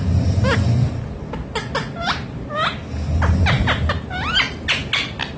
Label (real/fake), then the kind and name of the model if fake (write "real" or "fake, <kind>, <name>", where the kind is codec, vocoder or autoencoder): real